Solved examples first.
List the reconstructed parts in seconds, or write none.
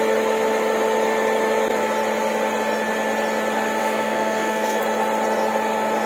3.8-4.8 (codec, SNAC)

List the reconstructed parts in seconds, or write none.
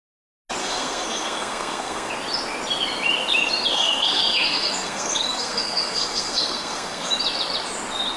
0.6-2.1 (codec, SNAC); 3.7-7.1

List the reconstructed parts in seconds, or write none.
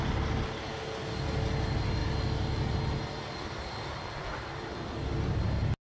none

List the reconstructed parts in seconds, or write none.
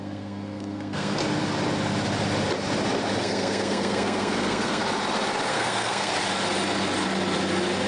0.0-1.2 (codec, SNAC); 3.2-4.8; 5.5-6.1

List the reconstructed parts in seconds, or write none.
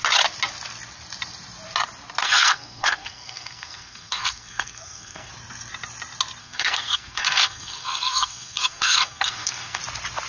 2.2-5.3 (codec, SNAC); 6.4-9.8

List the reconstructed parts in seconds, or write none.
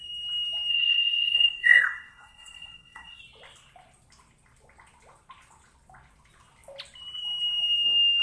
0.7-3.2 (codec, SNAC)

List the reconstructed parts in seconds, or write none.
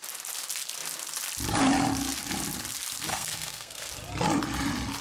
3.1-3.9 (codec, SNAC)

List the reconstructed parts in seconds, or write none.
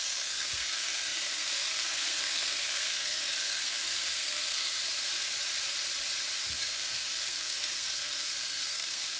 0.0-4.8 (codec, SNAC); 6.5-9.2